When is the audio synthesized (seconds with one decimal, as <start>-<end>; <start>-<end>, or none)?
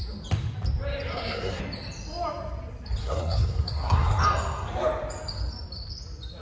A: 1.1-1.6; 3.0-4.2